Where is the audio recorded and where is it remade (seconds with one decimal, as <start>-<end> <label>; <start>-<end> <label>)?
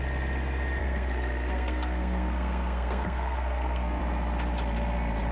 0.0-0.8 recorded; 0.8-4.0 remade; 4.0-5.3 recorded